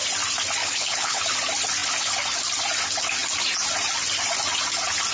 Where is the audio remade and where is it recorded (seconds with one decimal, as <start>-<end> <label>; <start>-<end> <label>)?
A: 0.0-0.6 recorded; 0.6-1.2 remade; 1.2-5.1 recorded